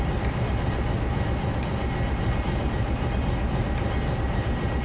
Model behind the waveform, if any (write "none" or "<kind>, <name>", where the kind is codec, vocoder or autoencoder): none